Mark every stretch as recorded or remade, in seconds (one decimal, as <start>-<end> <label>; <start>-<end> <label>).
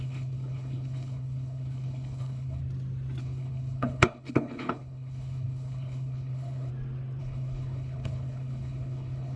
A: 0.0-2.6 remade; 2.6-3.2 recorded; 3.2-6.7 remade; 6.7-7.2 recorded; 7.2-9.4 remade